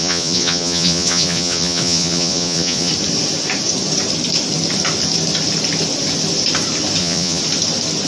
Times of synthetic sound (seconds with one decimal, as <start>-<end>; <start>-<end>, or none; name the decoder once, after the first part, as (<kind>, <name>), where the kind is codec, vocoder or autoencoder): 0.0-2.9 (vocoder, Vocos); 7.0-7.4